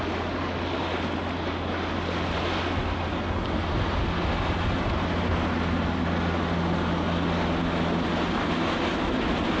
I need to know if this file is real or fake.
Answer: real